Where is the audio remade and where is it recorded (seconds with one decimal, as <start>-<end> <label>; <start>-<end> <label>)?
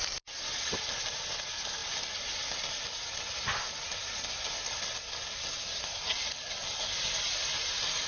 0.0-8.1 recorded